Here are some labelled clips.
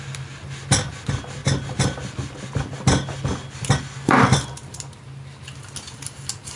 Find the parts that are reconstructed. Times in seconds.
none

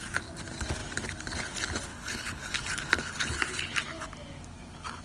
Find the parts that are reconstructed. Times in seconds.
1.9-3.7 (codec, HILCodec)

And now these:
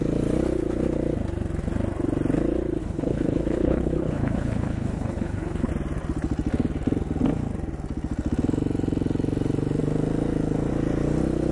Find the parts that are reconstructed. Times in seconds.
2.8-5.7 (codec, HILCodec)

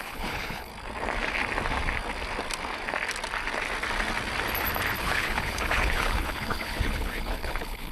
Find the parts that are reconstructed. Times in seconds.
0.0-0.7 (codec, HILCodec); 5.0-7.9

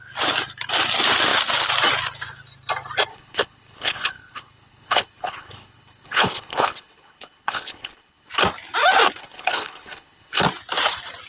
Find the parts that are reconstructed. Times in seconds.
3.1-8.3 (codec, HILCodec); 9.2-10.4

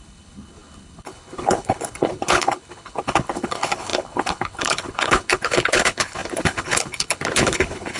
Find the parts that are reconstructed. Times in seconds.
0.0-8.0 (codec, HILCodec)